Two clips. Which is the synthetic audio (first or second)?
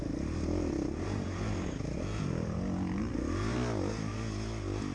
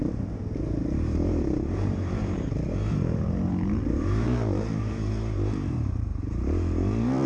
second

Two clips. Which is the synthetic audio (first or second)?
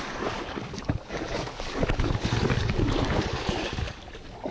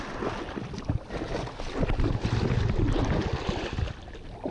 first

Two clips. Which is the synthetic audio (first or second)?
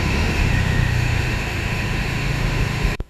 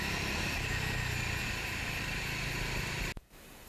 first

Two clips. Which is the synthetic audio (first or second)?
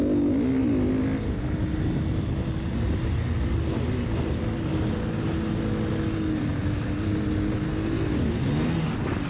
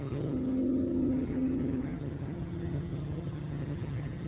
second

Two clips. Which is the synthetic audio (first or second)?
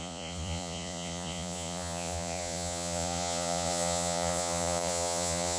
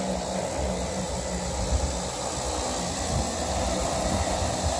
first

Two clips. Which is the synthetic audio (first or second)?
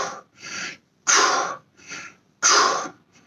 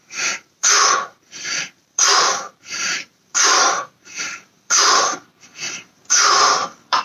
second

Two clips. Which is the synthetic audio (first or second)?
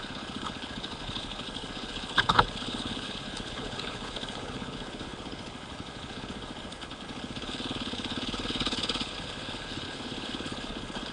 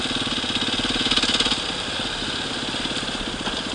first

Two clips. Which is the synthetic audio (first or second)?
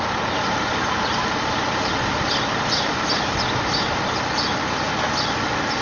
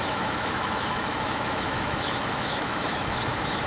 second